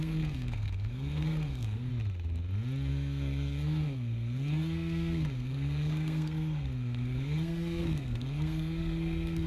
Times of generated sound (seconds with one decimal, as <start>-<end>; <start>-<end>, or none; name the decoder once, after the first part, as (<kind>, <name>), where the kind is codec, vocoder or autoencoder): 0.0-1.9 (codec, SNAC); 2.9-9.5